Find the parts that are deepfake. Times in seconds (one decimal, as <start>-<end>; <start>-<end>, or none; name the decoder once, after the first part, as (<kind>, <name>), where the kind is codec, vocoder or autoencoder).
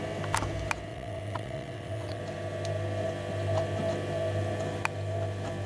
0.9-2.2 (vocoder, WaveNeXt)